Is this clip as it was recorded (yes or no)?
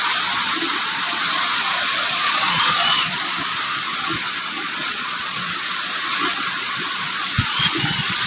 no